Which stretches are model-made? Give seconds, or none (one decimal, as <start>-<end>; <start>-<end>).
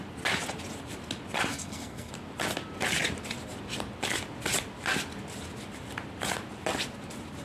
1.5-2.1